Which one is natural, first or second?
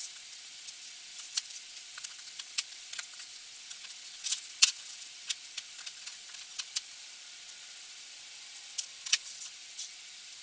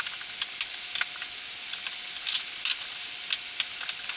second